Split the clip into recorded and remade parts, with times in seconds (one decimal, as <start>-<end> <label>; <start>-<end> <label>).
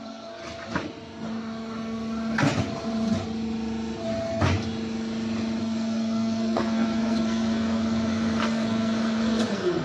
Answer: 0.0-0.4 remade; 0.4-5.6 recorded; 5.6-9.8 remade